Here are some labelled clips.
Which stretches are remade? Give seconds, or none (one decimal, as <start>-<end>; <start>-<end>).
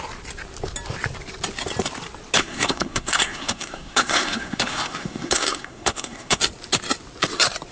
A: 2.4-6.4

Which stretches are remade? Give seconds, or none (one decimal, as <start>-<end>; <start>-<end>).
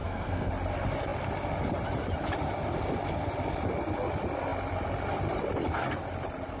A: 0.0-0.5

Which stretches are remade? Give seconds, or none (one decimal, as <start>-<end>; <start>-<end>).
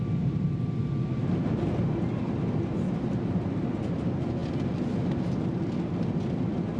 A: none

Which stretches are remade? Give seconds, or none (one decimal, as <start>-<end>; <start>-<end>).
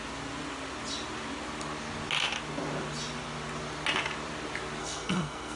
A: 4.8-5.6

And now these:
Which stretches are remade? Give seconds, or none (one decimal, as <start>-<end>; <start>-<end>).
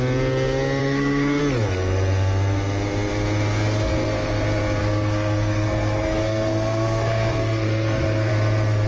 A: 0.8-1.4; 4.8-8.3